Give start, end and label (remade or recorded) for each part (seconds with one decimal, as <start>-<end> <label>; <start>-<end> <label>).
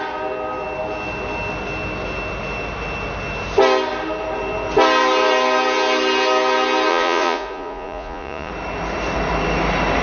0.0-6.9 recorded; 6.9-8.5 remade; 8.5-10.0 recorded